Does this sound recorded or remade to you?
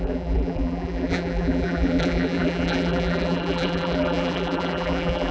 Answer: remade